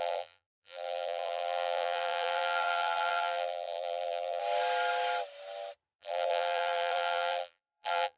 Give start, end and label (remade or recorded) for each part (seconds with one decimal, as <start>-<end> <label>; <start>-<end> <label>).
0.0-4.4 remade; 4.4-6.0 recorded; 6.0-8.2 remade